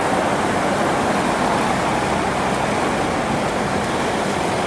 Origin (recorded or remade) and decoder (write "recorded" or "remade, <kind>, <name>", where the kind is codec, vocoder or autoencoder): recorded